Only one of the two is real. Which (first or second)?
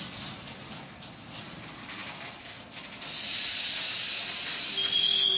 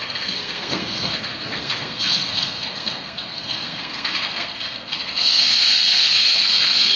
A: first